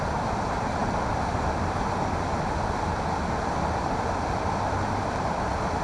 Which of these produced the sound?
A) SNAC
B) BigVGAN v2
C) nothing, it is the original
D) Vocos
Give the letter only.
C